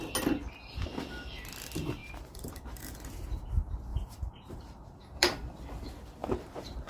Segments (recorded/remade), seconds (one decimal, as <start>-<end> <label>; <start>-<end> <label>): 0.0-2.0 recorded; 2.0-2.9 remade; 2.9-3.9 recorded; 3.9-5.6 remade; 5.6-6.2 recorded; 6.2-6.9 remade